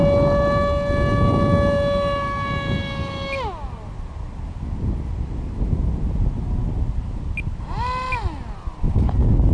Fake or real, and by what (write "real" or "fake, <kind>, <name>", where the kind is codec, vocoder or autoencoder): real